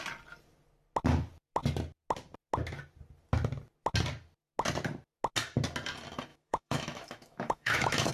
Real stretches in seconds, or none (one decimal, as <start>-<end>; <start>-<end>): 0.0-6.3